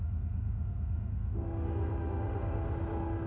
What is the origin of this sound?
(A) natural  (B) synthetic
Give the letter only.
B